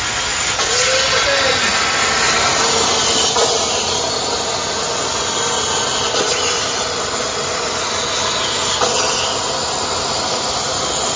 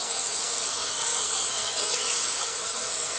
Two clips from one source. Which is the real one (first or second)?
first